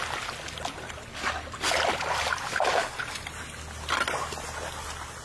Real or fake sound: real